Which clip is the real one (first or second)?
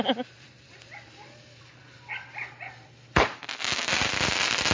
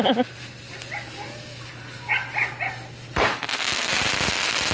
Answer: second